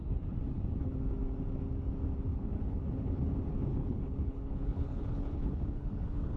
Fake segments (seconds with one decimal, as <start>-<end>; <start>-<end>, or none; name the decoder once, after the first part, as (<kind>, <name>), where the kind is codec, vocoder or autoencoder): 2.3-3.3 (codec, HILCodec); 3.7-6.4